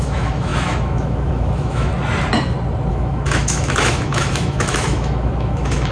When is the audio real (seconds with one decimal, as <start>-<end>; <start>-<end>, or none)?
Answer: 1.9-2.9